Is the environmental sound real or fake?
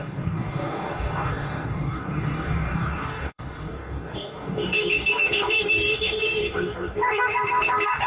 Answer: fake